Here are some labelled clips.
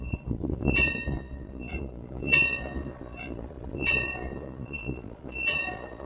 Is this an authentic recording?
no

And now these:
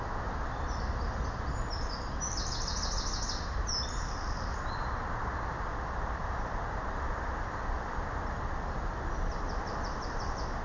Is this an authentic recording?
yes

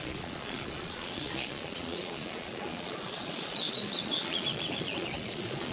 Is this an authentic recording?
no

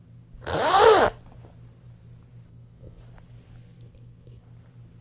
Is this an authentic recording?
yes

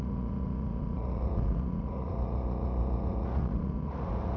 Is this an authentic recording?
no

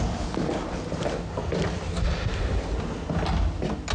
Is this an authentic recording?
yes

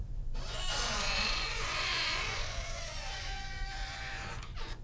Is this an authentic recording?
no